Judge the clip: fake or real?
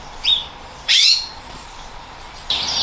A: fake